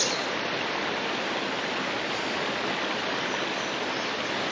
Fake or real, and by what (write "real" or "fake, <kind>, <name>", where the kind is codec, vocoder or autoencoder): real